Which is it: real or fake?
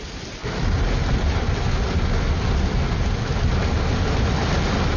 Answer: real